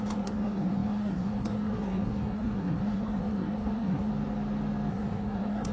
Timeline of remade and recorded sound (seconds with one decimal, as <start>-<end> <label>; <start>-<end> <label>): 0.0-4.1 remade; 4.1-4.9 recorded; 4.9-5.7 remade